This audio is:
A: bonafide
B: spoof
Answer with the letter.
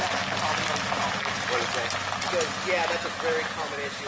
A